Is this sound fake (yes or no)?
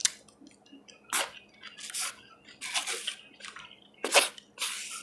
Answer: no